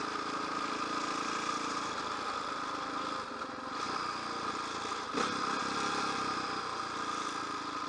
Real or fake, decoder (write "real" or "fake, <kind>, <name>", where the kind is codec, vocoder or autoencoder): real